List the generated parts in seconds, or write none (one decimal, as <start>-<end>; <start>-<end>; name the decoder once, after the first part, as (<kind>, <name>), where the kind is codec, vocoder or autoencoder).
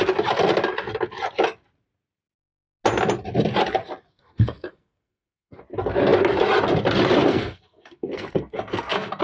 4.1-5.6 (codec, SNAC); 7.3-9.2